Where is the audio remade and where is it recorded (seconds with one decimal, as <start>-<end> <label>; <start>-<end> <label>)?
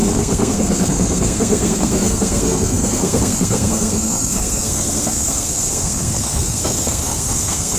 0.0-7.8 remade